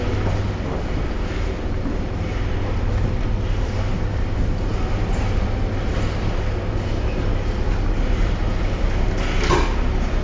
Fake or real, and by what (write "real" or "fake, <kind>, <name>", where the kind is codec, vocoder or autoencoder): real